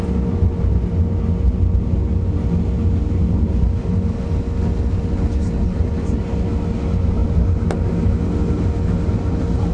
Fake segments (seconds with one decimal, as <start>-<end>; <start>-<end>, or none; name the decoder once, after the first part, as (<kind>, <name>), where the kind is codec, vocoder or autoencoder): none